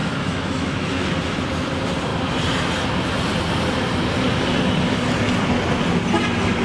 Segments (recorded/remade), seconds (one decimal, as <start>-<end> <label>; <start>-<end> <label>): 0.0-1.4 remade; 1.4-6.6 recorded

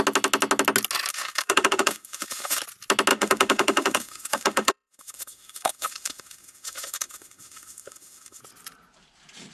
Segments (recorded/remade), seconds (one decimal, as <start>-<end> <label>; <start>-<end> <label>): 0.0-1.1 recorded; 1.1-2.6 remade; 2.6-3.1 recorded; 3.1-8.4 remade; 8.4-9.5 recorded

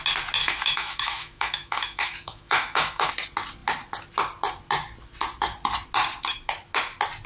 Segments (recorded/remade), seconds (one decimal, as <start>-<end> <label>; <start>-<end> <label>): 0.0-0.4 recorded; 0.4-3.1 remade; 3.1-7.3 recorded